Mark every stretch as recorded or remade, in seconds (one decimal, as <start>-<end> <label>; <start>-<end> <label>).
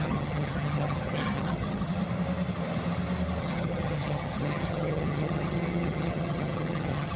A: 0.0-2.0 remade; 2.0-3.4 recorded; 3.4-7.2 remade